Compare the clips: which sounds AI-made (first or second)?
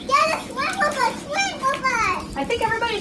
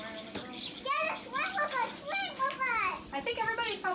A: first